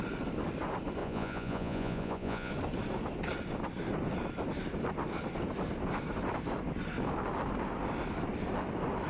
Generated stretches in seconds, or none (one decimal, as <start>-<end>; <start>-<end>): 1.0-2.5